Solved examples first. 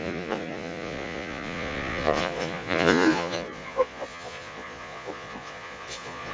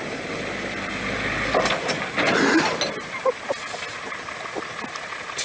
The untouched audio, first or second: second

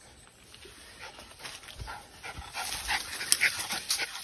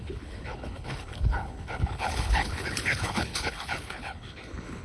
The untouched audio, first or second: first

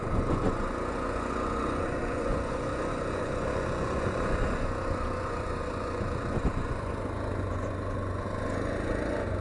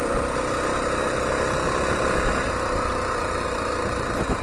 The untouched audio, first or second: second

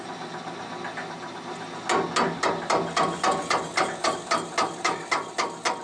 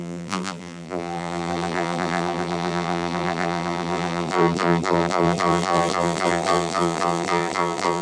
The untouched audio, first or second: first